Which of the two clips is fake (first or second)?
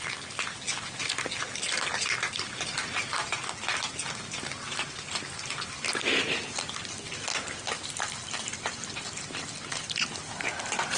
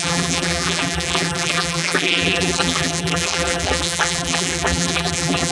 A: second